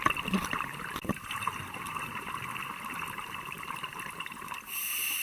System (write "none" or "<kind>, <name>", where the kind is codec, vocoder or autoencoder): vocoder, BigVGAN v2